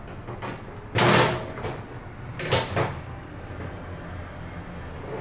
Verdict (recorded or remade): recorded